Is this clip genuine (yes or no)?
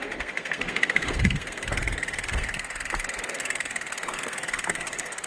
no